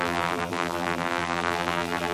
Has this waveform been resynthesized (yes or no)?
yes